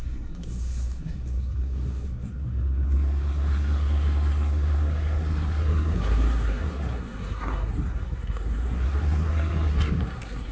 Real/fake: fake